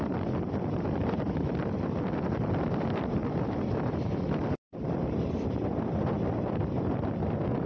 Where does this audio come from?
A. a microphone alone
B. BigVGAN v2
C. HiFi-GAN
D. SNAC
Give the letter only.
B